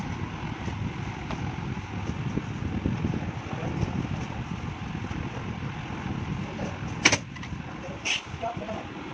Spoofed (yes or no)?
no